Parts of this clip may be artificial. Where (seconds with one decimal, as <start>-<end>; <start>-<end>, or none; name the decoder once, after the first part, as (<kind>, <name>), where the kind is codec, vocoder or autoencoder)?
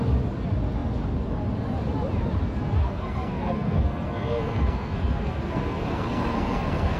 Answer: 2.8-7.0 (codec, SNAC)